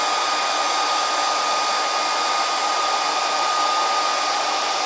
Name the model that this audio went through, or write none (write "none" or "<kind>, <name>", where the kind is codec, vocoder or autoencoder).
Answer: none